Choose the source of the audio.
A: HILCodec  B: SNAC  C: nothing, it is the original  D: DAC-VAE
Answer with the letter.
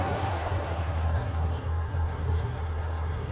B